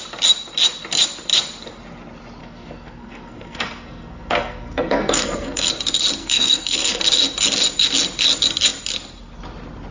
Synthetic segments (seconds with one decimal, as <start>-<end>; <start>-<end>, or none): 2.4-5.7; 6.2-7.0